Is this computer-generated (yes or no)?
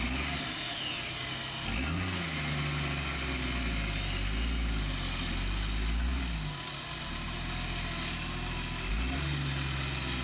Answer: no